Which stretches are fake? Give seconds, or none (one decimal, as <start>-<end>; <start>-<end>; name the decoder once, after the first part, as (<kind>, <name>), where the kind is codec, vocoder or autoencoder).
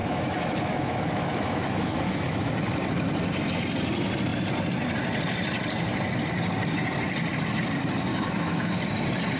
0.0-2.5 (autoencoder, DAC-VAE); 8.1-8.8